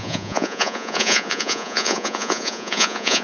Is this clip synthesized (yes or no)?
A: yes